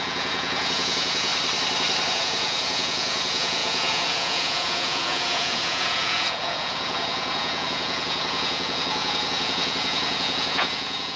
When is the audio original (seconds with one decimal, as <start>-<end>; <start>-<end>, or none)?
1.3-2.1